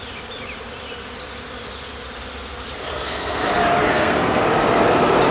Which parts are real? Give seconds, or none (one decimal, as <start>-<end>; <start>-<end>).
0.0-2.9; 3.4-3.9; 4.4-5.3